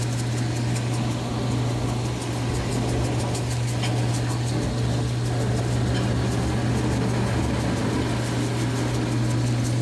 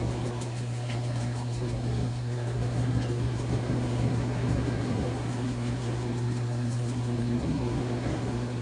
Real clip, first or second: first